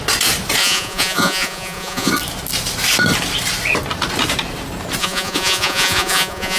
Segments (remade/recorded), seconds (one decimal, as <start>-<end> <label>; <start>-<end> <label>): 0.0-0.6 recorded; 0.6-2.1 remade; 2.1-5.0 recorded; 5.0-6.6 remade